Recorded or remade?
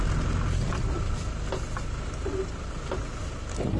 recorded